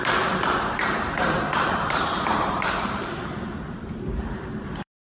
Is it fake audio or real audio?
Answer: fake